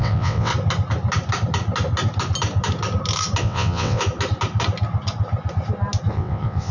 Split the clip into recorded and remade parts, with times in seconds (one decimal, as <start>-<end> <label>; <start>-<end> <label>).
0.0-0.5 remade; 0.5-3.4 recorded; 3.4-4.0 remade; 4.0-6.1 recorded; 6.1-6.7 remade